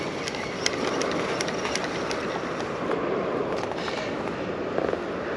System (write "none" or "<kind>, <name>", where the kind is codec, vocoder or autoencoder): none